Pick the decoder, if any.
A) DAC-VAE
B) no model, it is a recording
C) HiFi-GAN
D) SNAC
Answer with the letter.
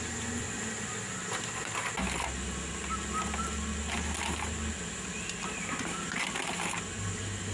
B